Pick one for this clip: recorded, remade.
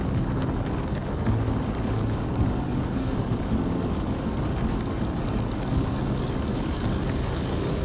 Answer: remade